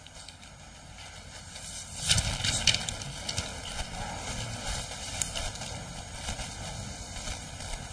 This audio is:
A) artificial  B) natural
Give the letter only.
B